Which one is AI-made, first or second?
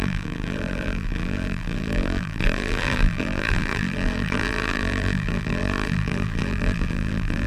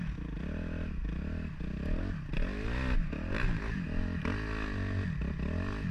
first